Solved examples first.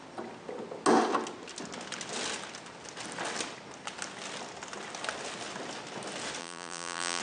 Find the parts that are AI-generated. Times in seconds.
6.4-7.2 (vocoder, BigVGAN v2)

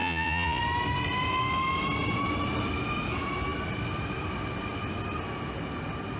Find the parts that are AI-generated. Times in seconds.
0.0-0.6 (vocoder, Vocos)

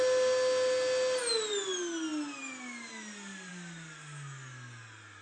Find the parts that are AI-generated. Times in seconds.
none

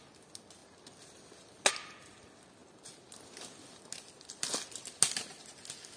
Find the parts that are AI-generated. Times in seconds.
none

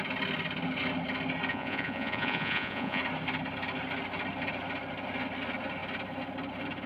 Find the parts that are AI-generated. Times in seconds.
1.5-3.0 (vocoder, Vocos)